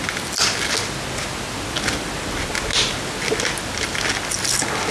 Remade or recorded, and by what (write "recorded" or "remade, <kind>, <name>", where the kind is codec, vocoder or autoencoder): recorded